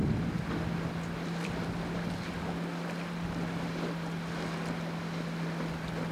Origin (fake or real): real